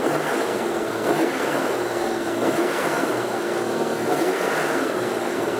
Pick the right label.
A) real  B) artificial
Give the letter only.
B